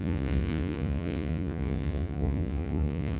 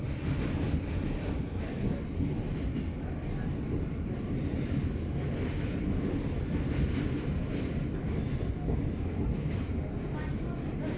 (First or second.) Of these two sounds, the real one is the second